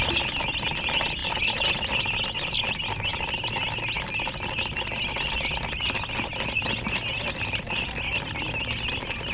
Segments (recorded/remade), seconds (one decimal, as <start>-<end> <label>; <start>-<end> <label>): 0.0-9.3 recorded

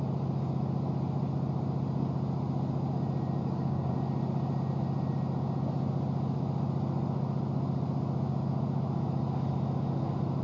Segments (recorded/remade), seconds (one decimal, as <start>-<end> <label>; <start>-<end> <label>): 0.0-3.4 recorded; 3.4-3.9 remade; 3.9-10.4 recorded

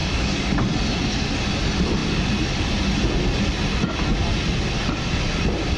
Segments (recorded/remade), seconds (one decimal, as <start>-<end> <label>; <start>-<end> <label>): 0.0-0.6 remade; 0.6-5.8 recorded

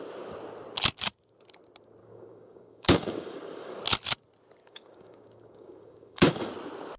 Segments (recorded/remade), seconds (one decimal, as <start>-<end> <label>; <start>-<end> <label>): 0.0-2.0 recorded; 2.0-3.8 remade; 3.8-4.6 recorded; 4.6-6.5 remade; 6.5-7.0 recorded

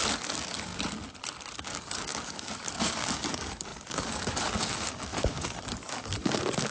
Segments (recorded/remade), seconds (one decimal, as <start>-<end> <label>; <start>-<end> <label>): 0.0-0.7 remade; 0.7-1.6 recorded; 1.6-6.7 remade

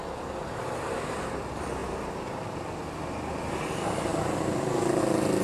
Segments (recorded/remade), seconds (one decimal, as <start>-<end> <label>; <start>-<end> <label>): 0.0-5.4 recorded

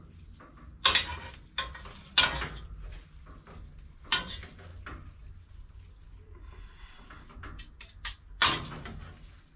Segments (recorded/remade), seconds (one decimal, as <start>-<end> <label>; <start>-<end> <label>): 0.0-9.6 recorded

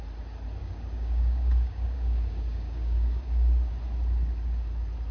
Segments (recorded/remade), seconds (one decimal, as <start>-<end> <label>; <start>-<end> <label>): 0.0-0.6 recorded; 0.6-3.7 remade; 3.7-5.1 recorded